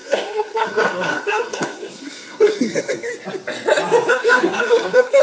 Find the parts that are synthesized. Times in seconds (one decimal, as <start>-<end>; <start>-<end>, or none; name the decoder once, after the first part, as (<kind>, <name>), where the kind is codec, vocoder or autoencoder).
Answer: 0.0-3.1 (codec, SNAC); 4.1-5.2